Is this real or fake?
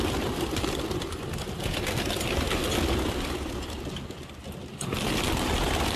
real